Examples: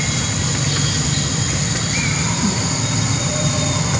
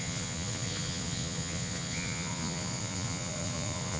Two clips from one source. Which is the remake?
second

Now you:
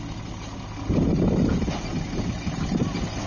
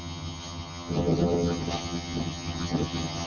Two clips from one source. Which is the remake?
second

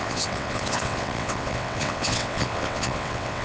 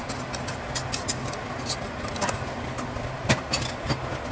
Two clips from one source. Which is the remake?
first